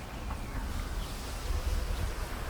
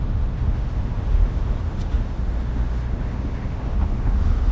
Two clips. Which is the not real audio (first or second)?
second